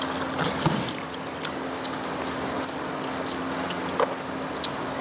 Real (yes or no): yes